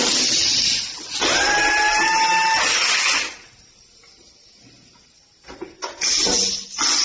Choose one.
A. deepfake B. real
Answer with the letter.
B